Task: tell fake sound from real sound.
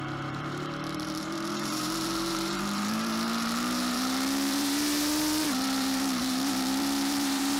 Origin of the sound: fake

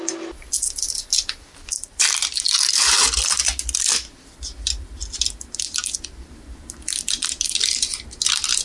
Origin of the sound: real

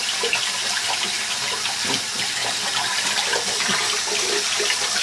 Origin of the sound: real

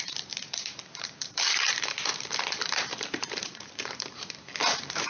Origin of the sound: fake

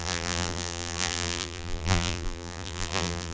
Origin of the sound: fake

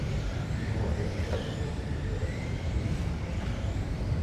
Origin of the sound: fake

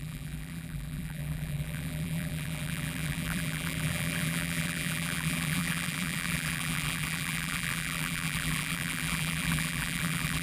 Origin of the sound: fake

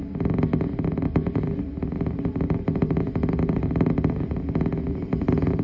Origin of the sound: real